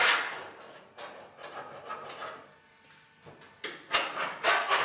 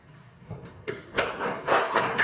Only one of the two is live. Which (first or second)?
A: first